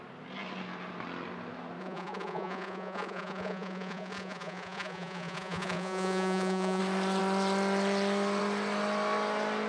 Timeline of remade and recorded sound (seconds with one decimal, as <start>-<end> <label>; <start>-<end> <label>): 0.0-1.8 recorded; 1.8-6.8 remade; 6.8-9.7 recorded